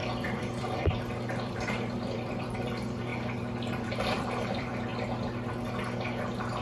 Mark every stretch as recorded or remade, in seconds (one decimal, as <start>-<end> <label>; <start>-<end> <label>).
0.0-4.9 remade; 4.9-6.6 recorded